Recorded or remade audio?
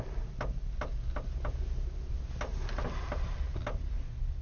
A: recorded